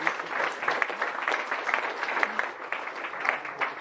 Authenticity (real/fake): real